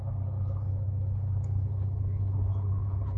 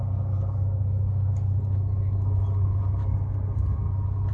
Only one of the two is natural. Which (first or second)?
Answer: second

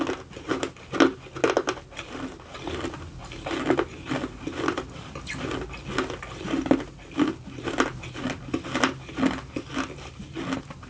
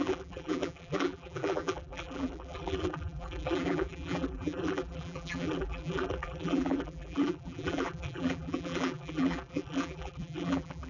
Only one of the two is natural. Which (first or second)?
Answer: first